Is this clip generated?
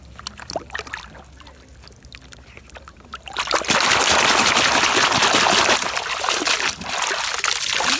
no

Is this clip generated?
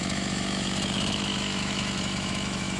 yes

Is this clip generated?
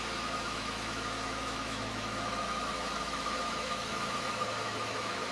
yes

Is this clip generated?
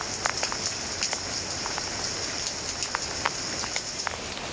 no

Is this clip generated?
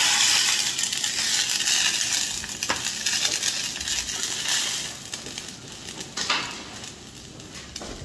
no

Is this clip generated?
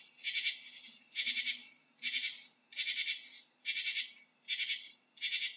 no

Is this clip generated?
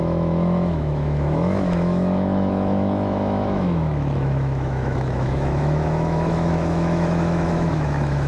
yes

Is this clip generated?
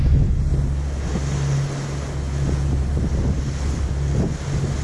no